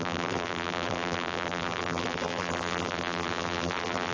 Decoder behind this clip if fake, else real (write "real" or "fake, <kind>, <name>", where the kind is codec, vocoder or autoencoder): fake, vocoder, BigVGAN v2